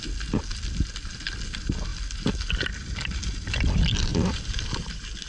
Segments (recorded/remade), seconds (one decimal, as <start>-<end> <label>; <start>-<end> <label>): 0.0-4.1 recorded; 4.1-5.3 remade